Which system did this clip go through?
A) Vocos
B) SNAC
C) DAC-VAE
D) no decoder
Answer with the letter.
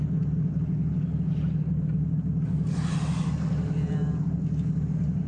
D